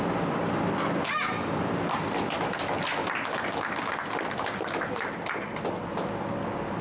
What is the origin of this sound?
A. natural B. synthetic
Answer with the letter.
A